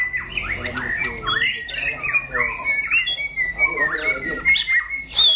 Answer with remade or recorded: recorded